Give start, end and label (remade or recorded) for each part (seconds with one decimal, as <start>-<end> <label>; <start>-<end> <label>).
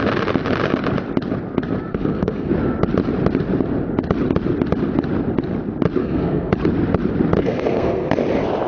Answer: 0.0-1.9 recorded; 1.9-2.5 remade; 2.5-6.0 recorded; 6.0-6.5 remade; 6.5-7.4 recorded; 7.4-8.1 remade; 8.1-8.7 recorded